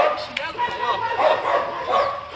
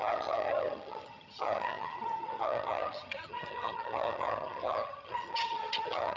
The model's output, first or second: second